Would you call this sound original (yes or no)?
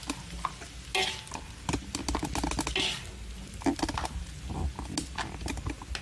yes